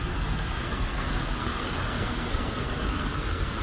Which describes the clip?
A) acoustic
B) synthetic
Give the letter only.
B